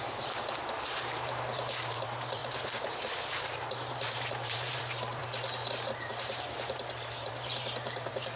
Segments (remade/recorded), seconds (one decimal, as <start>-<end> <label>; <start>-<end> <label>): 0.0-5.2 remade; 5.2-6.1 recorded; 6.1-8.4 remade